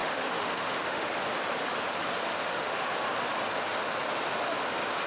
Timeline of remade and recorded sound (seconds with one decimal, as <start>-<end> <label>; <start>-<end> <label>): 0.0-1.2 remade; 1.2-2.3 recorded; 2.3-2.9 remade; 2.9-5.1 recorded